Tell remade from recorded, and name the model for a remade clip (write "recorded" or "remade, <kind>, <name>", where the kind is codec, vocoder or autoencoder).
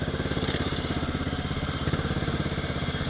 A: remade, vocoder, BigVGAN v2